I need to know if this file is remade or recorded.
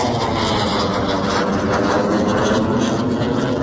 recorded